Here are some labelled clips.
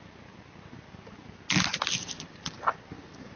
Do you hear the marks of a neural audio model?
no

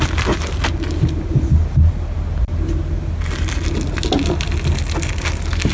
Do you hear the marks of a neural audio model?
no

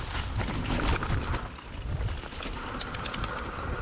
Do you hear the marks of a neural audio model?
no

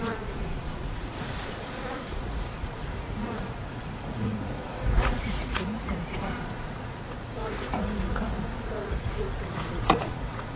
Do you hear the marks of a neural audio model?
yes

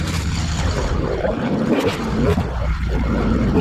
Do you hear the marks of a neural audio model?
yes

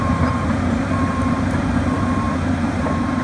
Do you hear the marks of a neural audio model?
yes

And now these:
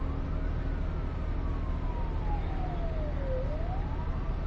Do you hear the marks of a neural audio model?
no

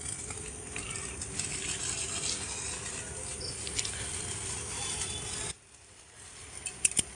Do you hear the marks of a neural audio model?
no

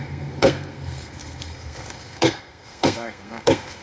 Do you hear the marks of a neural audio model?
yes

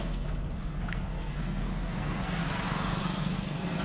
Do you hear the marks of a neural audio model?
yes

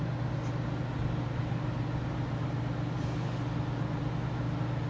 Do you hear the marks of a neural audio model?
no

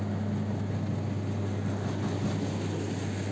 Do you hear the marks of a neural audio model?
no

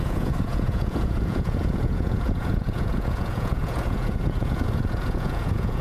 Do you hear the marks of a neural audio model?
yes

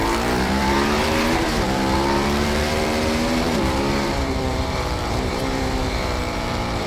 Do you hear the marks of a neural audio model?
yes